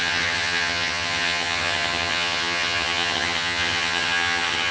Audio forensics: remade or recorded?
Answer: remade